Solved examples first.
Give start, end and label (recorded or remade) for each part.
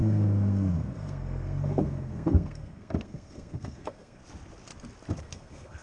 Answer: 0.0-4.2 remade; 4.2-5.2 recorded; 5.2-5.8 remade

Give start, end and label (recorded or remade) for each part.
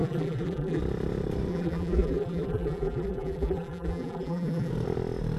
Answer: 0.0-0.8 remade; 0.8-1.5 recorded; 1.5-4.7 remade; 4.7-5.4 recorded